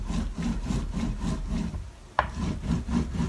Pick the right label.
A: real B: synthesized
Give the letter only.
A